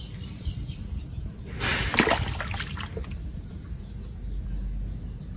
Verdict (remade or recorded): recorded